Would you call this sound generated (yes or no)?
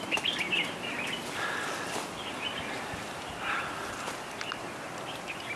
no